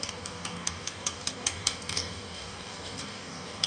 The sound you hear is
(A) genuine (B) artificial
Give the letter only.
B